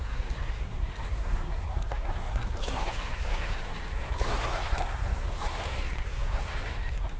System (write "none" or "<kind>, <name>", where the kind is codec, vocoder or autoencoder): codec, SNAC